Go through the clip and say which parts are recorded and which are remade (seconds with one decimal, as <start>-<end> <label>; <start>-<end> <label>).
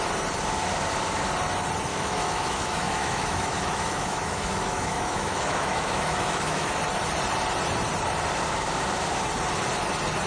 0.0-1.9 recorded; 1.9-6.8 remade; 6.8-10.3 recorded